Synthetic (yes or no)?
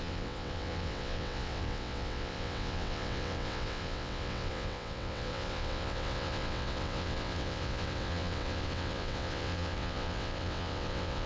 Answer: yes